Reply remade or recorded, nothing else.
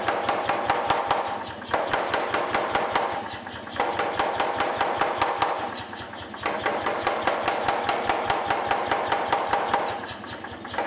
recorded